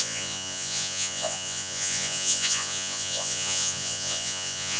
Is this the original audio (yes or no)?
no